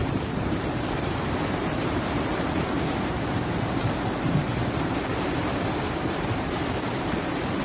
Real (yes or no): no